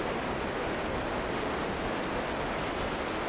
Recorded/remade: recorded